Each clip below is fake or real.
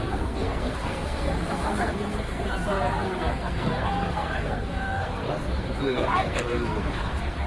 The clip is fake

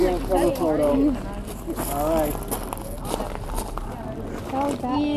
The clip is real